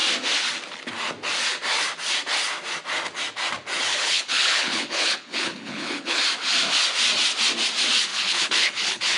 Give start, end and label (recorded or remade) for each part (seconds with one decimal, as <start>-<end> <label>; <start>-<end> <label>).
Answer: 0.0-3.9 recorded; 3.9-6.2 remade; 6.2-8.1 recorded; 8.1-9.2 remade